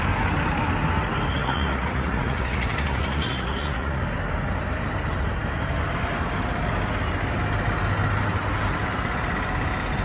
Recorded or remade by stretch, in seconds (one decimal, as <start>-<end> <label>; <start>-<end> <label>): 0.0-1.3 recorded; 1.3-4.0 remade; 4.0-10.0 recorded